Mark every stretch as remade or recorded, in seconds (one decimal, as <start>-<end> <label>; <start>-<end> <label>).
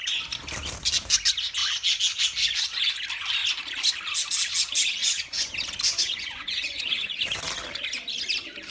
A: 0.0-5.0 recorded; 5.0-5.5 remade; 5.5-5.9 recorded; 5.9-7.2 remade; 7.2-8.7 recorded